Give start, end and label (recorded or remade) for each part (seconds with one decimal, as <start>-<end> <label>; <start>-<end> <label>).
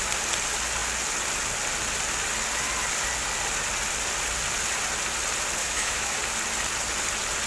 0.0-5.6 recorded; 5.6-6.2 remade; 6.2-7.5 recorded